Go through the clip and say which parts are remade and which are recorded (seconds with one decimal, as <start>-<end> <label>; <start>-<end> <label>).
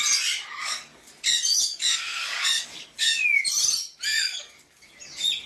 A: 0.0-0.6 recorded; 0.6-1.1 remade; 1.1-1.5 recorded; 1.5-3.4 remade; 3.4-4.1 recorded; 4.1-4.9 remade; 4.9-5.5 recorded